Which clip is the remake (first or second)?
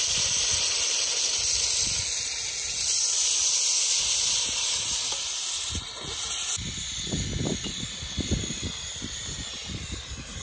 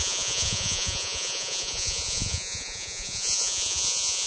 second